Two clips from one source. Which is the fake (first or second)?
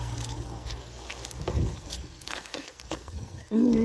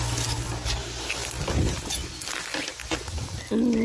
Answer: first